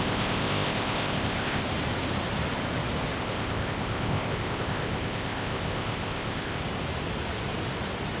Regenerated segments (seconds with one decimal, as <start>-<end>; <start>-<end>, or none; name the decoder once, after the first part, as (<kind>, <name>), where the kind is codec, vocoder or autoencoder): 0.0-1.6 (codec, ZipCodec); 3.2-6.6